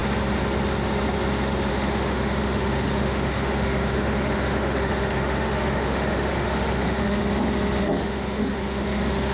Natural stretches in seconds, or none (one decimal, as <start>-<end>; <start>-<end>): 0.0-1.7; 7.2-7.8